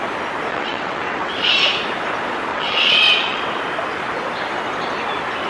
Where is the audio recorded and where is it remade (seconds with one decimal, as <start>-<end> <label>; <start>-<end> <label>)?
0.0-0.5 recorded; 0.5-1.3 remade; 1.3-2.5 recorded; 2.5-3.4 remade; 3.4-5.5 recorded

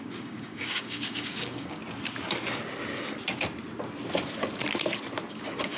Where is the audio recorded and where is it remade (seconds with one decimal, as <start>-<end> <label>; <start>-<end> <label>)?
0.0-1.8 remade; 1.8-5.3 recorded; 5.3-5.8 remade

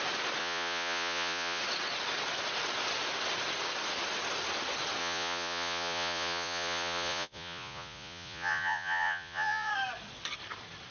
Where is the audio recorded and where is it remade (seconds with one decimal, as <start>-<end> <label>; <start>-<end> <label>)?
0.0-0.4 recorded; 0.4-1.6 remade; 1.6-5.0 recorded; 5.0-9.7 remade; 9.7-10.9 recorded